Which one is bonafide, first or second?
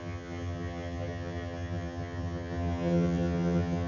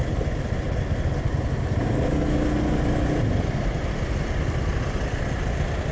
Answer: second